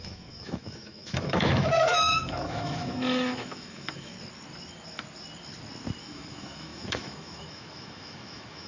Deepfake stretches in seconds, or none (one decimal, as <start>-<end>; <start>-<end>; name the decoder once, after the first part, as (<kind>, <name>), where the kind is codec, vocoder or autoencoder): 0.0-4.1 (autoencoder, DAC-VAE); 6.0-8.7